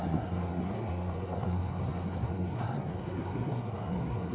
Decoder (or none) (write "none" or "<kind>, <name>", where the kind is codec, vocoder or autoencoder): codec, SNAC